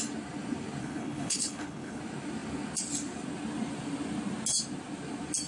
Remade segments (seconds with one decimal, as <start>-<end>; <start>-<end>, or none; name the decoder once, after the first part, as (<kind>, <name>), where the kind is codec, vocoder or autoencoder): 0.8-2.0 (codec, HILCodec)